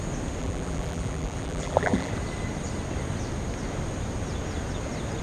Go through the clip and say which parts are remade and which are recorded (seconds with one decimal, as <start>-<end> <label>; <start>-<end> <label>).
0.0-0.4 recorded; 0.4-2.1 remade; 2.1-5.2 recorded